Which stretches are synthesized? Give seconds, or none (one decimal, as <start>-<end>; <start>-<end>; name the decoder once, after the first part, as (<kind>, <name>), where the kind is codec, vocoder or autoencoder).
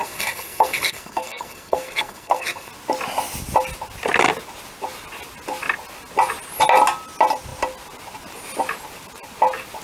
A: 0.0-2.7 (codec, SNAC)